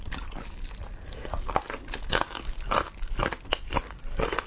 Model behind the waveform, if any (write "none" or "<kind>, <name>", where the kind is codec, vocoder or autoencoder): none